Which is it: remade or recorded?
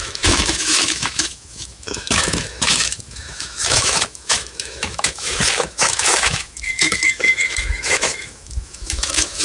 remade